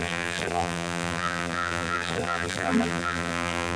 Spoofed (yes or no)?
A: yes